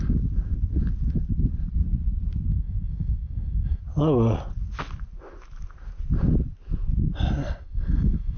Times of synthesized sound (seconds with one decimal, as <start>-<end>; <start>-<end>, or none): 2.5-3.8; 7.4-8.4